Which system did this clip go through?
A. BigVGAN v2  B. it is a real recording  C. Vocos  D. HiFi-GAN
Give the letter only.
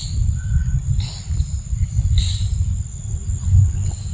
B